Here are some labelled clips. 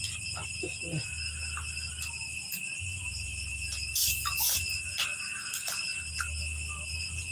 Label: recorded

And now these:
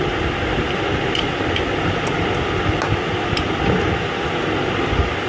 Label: recorded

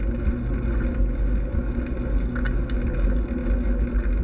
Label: recorded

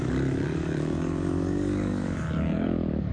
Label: remade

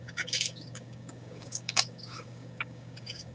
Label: remade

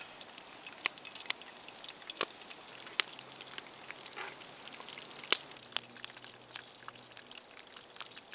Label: recorded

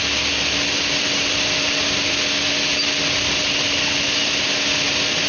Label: recorded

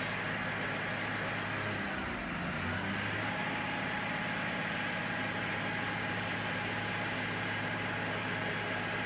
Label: recorded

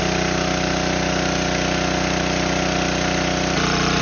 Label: recorded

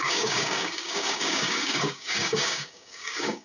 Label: remade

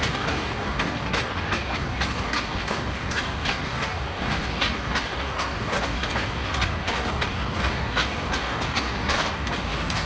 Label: remade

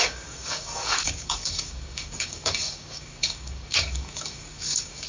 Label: remade